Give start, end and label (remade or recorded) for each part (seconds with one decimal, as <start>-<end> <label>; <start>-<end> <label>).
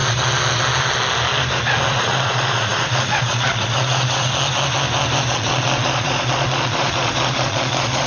0.0-1.9 recorded; 1.9-4.3 remade; 4.3-5.3 recorded; 5.3-8.1 remade